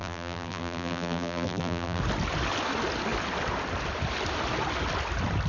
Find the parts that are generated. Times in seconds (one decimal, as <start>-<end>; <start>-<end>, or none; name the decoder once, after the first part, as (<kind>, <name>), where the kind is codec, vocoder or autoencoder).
0.0-2.0 (vocoder, BigVGAN v2)